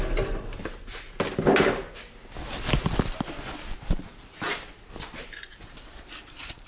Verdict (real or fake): real